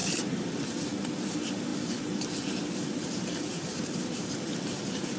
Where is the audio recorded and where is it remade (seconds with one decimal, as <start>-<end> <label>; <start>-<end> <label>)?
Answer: 0.0-5.2 recorded